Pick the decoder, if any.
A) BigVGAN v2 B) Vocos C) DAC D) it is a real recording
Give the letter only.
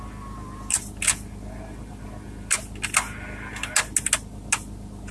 D